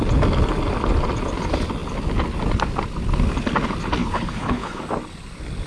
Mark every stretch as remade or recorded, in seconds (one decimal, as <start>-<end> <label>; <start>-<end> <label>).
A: 0.0-4.0 recorded; 4.0-4.8 remade; 4.8-5.7 recorded